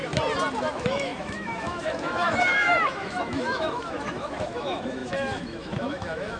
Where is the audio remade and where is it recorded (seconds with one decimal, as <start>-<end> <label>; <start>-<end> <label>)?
0.0-0.7 recorded; 0.7-6.4 remade